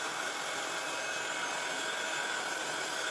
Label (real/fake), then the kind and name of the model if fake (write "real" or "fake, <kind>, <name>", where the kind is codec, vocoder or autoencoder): real